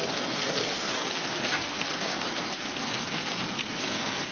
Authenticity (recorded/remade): remade